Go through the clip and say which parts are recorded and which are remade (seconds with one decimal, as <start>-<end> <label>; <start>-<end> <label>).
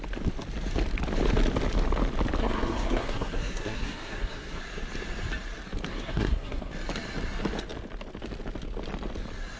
0.0-2.4 recorded; 2.4-4.6 remade; 4.6-5.9 recorded; 5.9-6.7 remade; 6.7-9.6 recorded